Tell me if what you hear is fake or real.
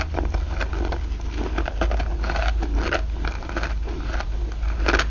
real